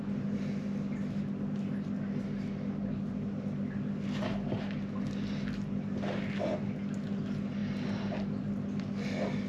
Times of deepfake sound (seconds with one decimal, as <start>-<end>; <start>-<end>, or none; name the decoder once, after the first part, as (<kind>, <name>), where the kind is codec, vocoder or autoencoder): none